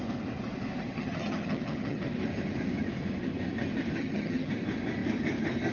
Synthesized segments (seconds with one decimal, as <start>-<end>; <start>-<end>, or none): 0.8-2.0; 4.0-4.5